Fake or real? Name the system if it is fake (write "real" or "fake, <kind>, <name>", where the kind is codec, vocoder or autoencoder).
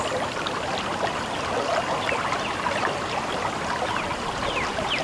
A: real